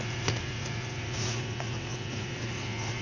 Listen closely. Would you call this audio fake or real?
fake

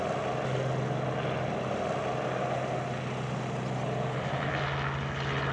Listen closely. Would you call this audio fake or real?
real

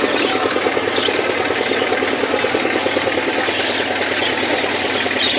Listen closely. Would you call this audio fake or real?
real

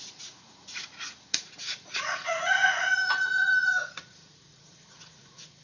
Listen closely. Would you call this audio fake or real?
fake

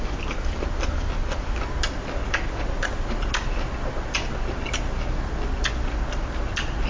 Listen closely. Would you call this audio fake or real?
real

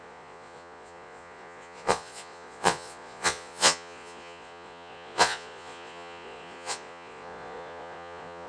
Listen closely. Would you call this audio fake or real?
fake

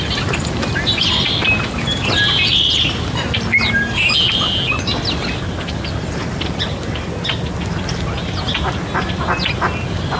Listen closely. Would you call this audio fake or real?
real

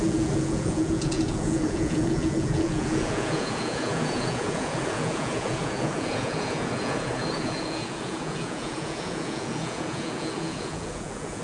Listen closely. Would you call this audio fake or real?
fake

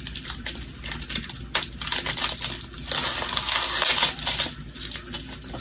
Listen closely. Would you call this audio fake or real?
real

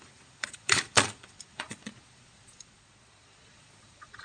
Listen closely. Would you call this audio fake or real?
fake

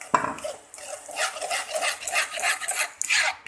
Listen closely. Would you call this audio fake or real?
real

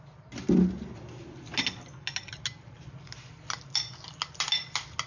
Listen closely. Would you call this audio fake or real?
real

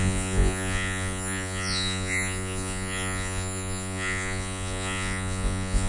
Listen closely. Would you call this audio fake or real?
fake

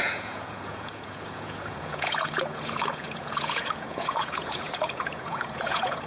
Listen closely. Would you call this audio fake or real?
fake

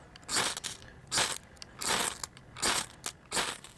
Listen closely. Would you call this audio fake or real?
real